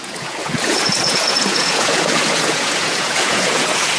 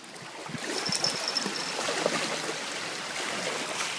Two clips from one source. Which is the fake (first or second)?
first